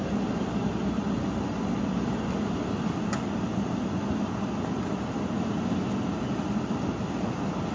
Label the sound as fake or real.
real